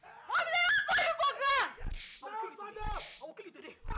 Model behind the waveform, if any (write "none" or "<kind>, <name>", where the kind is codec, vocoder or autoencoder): none